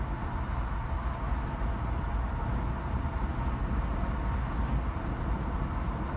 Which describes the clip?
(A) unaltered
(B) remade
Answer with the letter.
A